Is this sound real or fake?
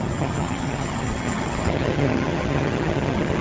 fake